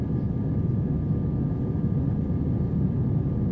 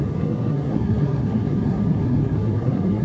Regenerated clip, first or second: second